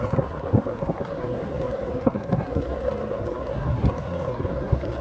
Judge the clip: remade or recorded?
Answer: remade